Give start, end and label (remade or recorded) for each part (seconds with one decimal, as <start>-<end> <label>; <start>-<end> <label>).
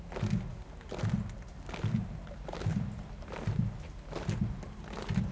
0.0-2.7 recorded; 2.7-3.3 remade; 3.3-5.3 recorded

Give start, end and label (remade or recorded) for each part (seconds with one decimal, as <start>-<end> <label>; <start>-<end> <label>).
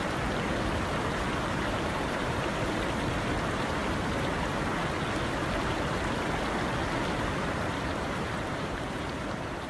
0.0-1.3 recorded; 1.3-3.8 remade; 3.8-7.6 recorded; 7.6-9.7 remade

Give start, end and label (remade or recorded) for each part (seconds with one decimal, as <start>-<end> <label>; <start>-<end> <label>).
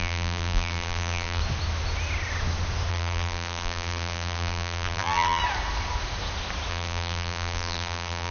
0.0-1.4 remade; 1.4-2.9 recorded; 2.9-5.4 remade; 5.4-6.7 recorded; 6.7-8.3 remade